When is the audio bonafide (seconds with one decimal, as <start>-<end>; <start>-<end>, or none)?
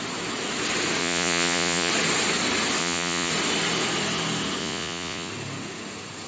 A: 0.0-1.0; 1.9-2.8; 3.3-4.6; 5.3-6.3